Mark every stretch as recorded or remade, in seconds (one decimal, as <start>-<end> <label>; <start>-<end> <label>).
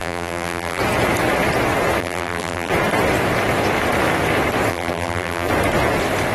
0.0-0.8 remade; 0.8-2.0 recorded; 2.0-2.7 remade; 2.7-4.7 recorded; 4.7-5.5 remade; 5.5-6.3 recorded